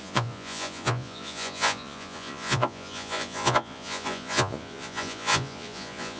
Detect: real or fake fake